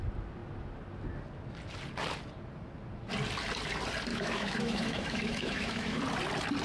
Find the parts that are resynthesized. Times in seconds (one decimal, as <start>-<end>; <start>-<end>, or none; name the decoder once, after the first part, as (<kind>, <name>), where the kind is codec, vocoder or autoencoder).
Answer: 4.1-6.0 (autoencoder, DAC-VAE)